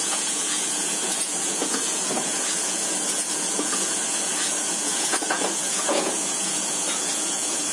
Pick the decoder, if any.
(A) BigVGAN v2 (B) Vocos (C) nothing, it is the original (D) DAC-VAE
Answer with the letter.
B